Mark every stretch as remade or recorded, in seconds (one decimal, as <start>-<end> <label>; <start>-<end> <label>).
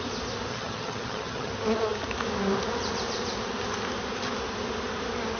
0.0-0.5 recorded; 0.5-1.5 remade; 1.5-5.4 recorded